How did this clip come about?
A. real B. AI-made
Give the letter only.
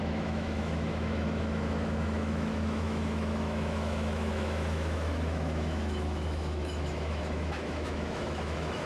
B